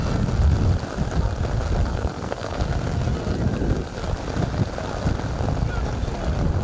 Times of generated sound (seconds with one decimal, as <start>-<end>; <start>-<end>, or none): 1.9-2.6